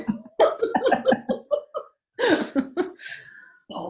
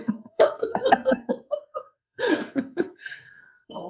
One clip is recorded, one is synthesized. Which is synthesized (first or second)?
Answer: second